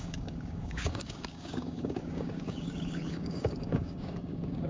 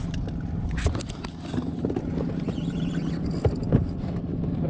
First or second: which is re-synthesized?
first